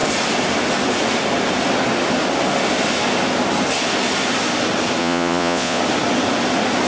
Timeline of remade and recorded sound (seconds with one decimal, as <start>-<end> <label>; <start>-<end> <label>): 0.0-5.0 recorded; 5.0-5.8 remade; 5.8-6.9 recorded